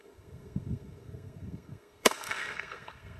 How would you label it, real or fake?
fake